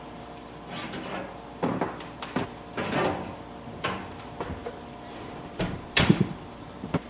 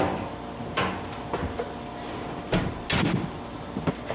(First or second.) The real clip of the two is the second